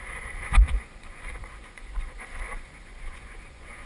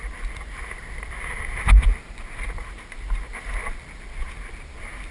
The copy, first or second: first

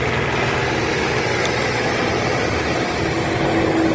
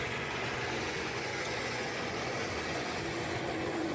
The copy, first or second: second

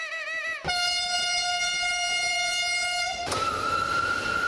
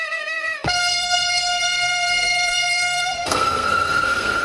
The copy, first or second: second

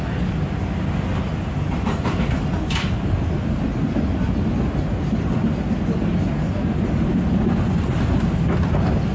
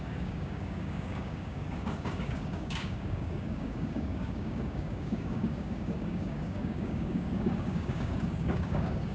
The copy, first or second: second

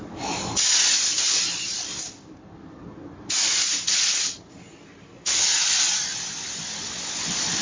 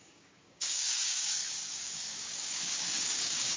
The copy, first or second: second